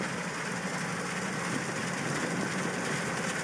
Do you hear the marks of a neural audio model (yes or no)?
no